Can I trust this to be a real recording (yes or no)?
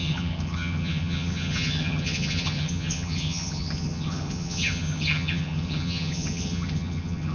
no